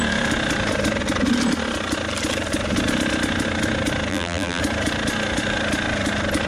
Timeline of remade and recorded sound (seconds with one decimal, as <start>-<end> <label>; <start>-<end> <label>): 0.0-4.1 recorded; 4.1-4.6 remade; 4.6-6.5 recorded